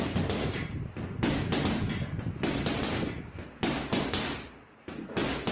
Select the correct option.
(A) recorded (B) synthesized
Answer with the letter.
A